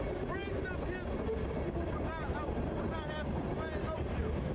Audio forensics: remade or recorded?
recorded